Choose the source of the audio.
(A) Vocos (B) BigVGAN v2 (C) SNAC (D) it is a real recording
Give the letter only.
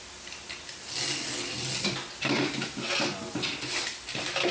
D